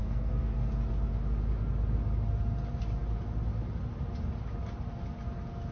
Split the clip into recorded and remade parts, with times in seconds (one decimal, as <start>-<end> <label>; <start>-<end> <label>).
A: 0.0-0.7 remade; 0.7-5.7 recorded